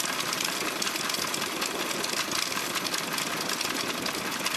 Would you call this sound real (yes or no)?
yes